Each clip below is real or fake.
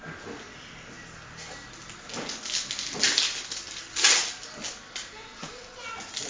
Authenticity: real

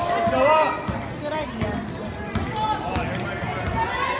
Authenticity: real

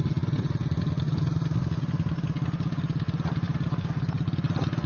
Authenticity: real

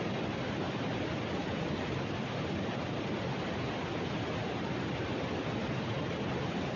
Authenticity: real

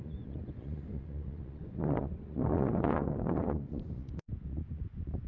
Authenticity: fake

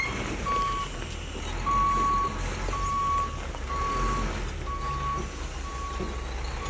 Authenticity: real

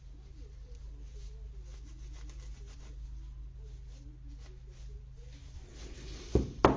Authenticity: real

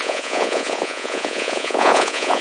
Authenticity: fake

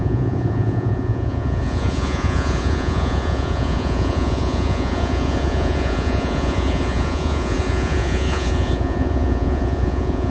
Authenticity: fake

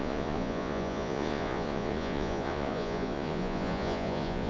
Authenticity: fake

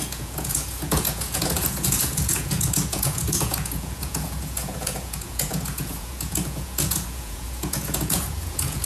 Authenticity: fake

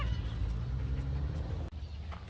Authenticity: real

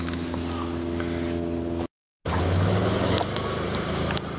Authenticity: real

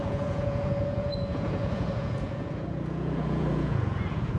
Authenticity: fake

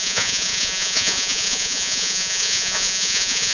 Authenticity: fake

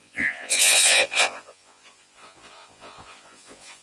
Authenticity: fake